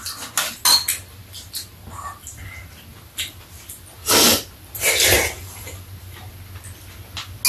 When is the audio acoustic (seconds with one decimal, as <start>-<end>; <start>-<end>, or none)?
0.0-7.5